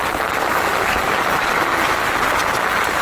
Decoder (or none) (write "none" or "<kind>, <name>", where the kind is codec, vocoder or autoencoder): none